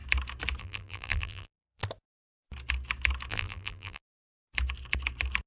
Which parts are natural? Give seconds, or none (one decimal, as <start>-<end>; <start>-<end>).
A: 0.0-0.6; 1.8-3.3; 4.0-5.5